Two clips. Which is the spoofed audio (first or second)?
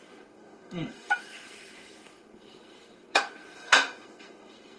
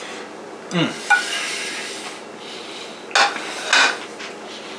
first